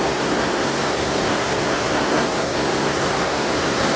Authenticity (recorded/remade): remade